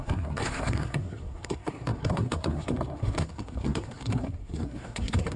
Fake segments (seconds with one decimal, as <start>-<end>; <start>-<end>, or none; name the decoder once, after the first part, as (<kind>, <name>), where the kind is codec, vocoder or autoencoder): 0.0-5.4 (codec, SNAC)